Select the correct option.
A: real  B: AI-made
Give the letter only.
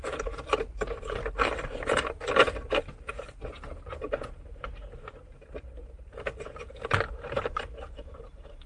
B